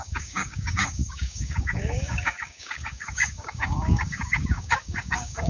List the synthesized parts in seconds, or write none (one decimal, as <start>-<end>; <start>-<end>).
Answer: 0.0-5.5